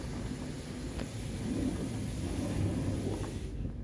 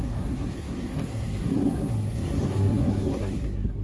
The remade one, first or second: second